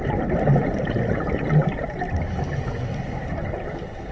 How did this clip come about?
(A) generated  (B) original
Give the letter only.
B